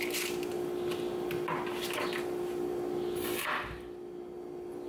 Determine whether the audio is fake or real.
real